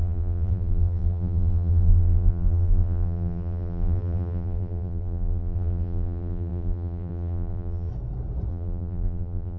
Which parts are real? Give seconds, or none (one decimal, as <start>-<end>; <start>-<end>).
7.9-8.5

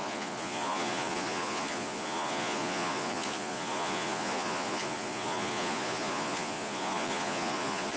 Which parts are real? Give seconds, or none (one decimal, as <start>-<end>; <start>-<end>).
none

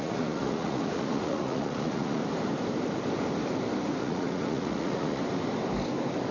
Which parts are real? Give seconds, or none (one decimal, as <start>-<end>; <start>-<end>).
2.2-4.0; 5.2-6.3